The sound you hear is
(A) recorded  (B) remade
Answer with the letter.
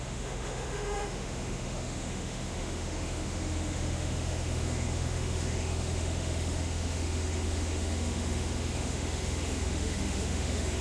B